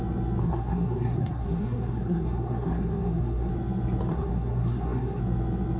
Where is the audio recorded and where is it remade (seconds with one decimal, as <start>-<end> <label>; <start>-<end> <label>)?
0.0-0.4 recorded; 0.4-3.5 remade; 3.5-4.1 recorded; 4.1-5.2 remade; 5.2-5.8 recorded